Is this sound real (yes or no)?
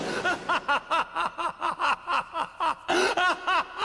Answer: yes